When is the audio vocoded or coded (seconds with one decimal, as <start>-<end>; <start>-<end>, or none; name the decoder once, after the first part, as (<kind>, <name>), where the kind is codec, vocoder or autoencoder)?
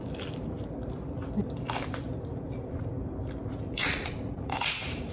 3.8-5.1 (vocoder, Vocos)